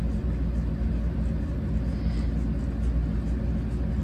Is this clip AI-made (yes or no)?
no